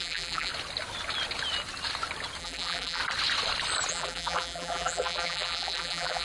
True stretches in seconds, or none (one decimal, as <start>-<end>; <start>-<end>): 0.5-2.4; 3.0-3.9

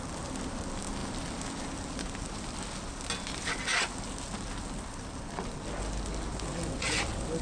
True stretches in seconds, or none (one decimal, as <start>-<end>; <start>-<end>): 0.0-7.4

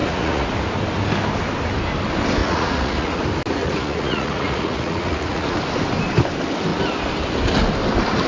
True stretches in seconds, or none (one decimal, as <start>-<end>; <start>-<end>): 0.5-2.4; 3.2-3.6; 5.6-8.3

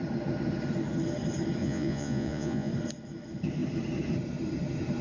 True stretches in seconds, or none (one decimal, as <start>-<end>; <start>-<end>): 0.0-1.6; 2.7-5.0